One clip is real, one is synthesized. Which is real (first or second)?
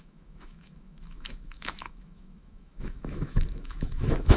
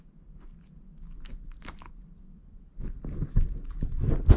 second